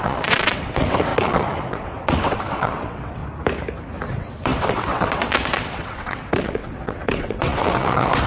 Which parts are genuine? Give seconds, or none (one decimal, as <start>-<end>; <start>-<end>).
3.2-4.1